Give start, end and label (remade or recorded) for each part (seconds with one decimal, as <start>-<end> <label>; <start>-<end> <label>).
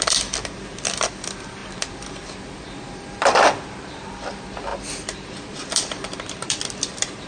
0.0-4.7 remade; 4.7-5.3 recorded; 5.3-7.3 remade